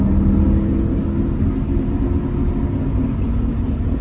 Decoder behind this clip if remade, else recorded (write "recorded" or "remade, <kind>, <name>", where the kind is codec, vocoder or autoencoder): recorded